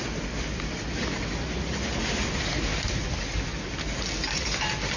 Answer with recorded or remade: recorded